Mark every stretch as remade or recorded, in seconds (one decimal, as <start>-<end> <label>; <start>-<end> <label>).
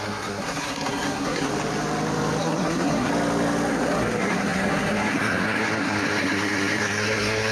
0.0-1.5 remade; 1.5-2.4 recorded; 2.4-3.1 remade; 3.1-3.7 recorded; 3.7-7.5 remade